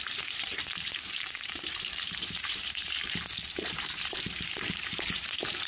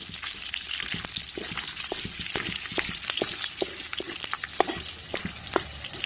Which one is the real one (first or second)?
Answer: second